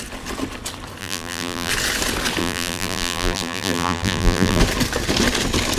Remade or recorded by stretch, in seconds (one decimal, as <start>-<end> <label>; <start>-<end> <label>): 0.0-1.0 recorded; 1.0-1.7 remade; 1.7-2.4 recorded; 2.4-4.6 remade; 4.6-5.8 recorded